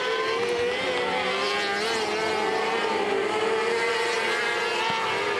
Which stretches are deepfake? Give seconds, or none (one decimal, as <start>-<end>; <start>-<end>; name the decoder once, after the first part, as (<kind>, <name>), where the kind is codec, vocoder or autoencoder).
none